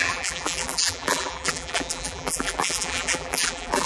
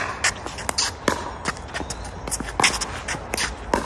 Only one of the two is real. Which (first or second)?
second